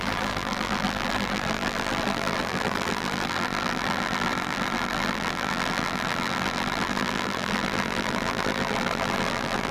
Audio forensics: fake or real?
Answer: fake